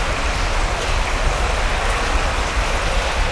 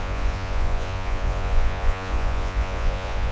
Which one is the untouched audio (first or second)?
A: first